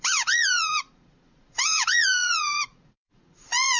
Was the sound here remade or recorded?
remade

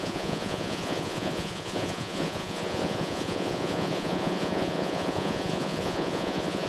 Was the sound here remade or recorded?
remade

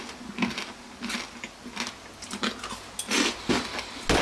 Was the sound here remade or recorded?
recorded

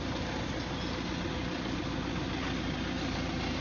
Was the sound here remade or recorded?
recorded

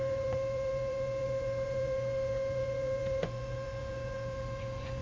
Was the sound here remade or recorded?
remade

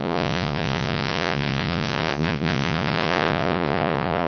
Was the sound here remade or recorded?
remade